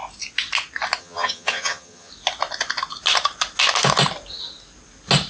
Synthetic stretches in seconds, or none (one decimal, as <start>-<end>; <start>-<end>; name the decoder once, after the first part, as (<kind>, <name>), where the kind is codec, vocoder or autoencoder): 1.0-2.1 (vocoder, HiFi-GAN)